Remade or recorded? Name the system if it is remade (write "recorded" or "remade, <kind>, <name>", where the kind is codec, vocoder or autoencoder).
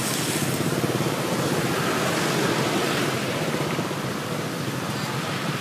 recorded